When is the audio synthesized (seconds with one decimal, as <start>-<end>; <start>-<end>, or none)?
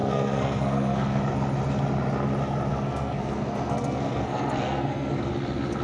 0.0-1.2; 2.7-5.3